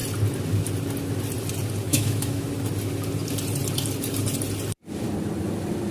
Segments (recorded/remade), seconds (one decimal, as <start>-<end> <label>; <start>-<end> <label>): 0.0-1.9 recorded; 1.9-2.5 remade; 2.5-5.9 recorded